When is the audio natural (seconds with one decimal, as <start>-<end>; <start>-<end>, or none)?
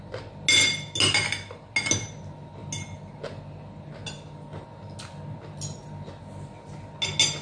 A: 0.0-7.4